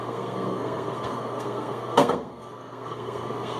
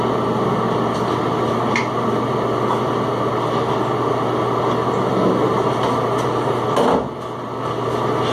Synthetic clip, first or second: first